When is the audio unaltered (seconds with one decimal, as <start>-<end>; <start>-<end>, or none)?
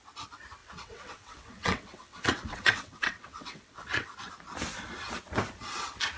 0.0-0.6; 4.3-6.2